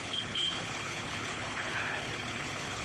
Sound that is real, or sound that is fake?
fake